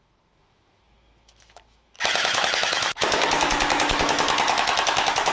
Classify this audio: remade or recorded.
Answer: remade